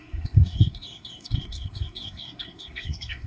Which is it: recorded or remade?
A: remade